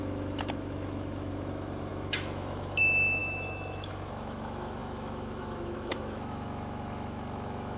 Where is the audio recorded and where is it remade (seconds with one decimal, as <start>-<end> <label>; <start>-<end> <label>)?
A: 0.0-7.8 remade